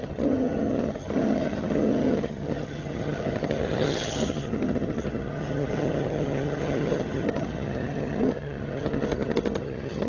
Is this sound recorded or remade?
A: remade